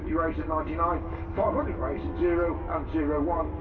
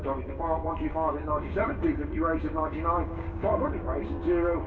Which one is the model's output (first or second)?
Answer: second